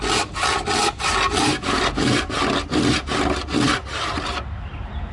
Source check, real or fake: real